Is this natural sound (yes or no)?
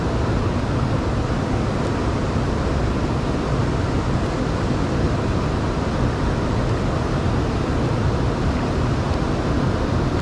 yes